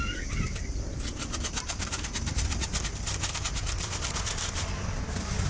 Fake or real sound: real